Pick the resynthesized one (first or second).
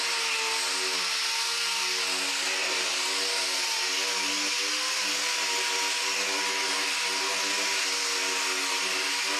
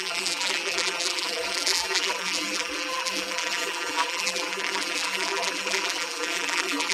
second